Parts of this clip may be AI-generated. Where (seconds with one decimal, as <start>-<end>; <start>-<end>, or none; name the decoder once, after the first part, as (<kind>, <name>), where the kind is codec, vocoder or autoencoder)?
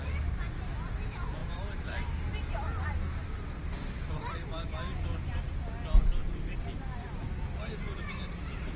none